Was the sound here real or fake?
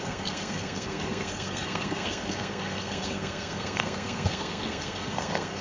fake